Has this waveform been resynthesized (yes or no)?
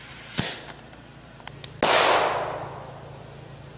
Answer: no